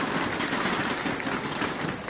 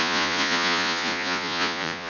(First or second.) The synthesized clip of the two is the second